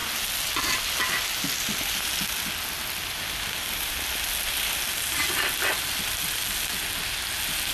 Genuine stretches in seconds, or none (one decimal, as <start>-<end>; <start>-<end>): 0.0-7.7